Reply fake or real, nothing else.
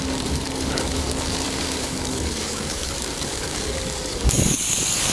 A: fake